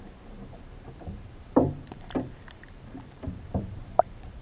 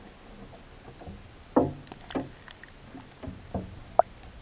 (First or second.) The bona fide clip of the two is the second